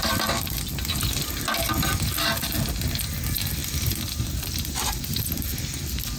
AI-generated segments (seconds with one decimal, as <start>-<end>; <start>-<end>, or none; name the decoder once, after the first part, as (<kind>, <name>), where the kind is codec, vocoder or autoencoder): 3.6-4.5 (vocoder, BigVGAN v2)